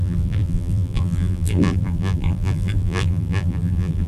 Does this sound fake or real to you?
fake